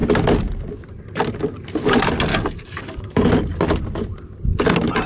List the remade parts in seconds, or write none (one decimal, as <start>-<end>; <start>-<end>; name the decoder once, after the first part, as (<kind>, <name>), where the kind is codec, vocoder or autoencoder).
2.3-3.3 (codec, DAC)